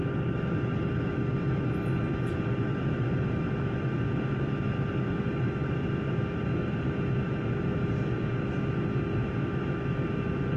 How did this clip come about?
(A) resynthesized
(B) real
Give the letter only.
B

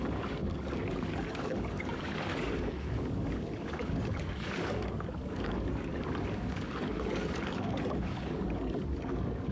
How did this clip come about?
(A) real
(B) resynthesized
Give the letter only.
B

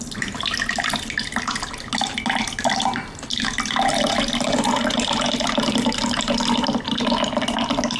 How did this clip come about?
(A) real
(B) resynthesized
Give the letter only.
A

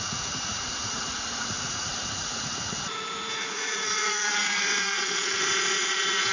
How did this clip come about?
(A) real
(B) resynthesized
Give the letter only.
B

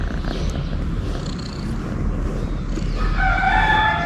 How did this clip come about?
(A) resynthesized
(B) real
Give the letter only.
B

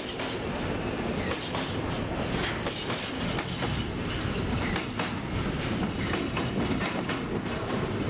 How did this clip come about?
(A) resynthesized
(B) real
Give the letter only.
B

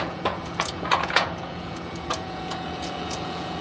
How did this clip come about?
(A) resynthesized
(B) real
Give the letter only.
A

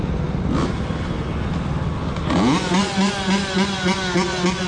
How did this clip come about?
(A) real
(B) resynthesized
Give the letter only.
A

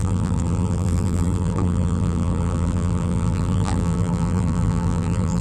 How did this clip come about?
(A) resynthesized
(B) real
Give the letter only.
A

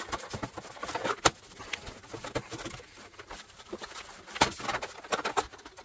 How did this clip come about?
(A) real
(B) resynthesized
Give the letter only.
A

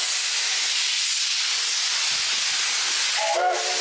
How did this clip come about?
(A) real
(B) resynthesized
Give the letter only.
A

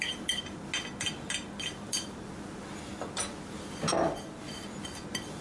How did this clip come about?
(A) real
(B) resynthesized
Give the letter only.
A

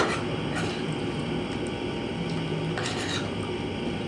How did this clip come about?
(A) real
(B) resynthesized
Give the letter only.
A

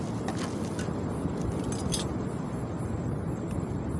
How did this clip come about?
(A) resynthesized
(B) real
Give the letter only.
B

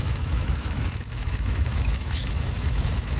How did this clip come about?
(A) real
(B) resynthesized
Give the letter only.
B